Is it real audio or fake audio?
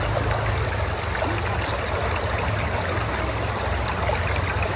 real